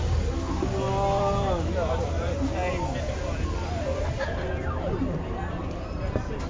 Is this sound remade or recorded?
recorded